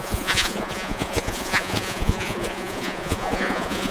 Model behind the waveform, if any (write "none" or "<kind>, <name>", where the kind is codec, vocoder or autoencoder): vocoder, Vocos